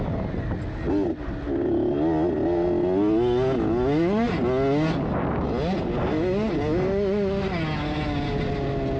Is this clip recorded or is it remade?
recorded